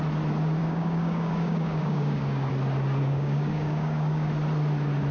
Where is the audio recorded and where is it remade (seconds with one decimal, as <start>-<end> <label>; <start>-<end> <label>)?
0.0-0.6 recorded; 0.6-2.5 remade; 2.5-3.0 recorded; 3.0-4.3 remade; 4.3-5.1 recorded